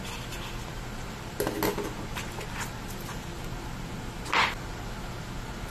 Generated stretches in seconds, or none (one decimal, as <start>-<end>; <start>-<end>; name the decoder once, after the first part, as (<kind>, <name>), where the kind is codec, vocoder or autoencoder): none